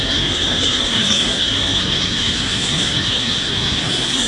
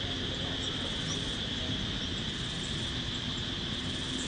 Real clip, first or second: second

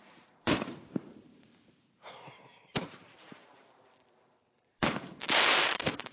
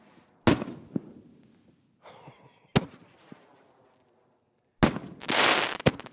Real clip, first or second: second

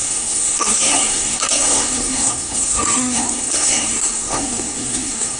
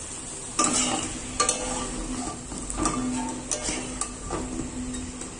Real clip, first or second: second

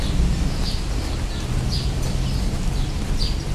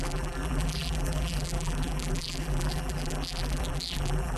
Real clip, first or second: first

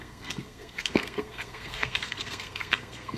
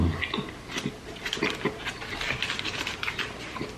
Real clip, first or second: second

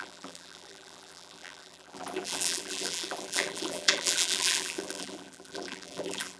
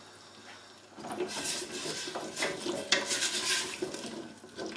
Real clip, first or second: second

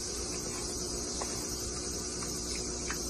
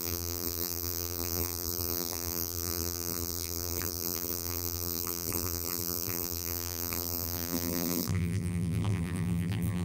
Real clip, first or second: first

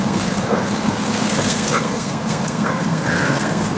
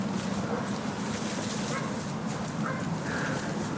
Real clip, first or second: second